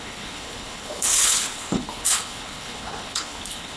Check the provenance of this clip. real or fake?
fake